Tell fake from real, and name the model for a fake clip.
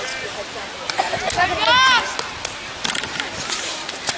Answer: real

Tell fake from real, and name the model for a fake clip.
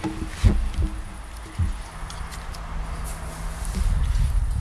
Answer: real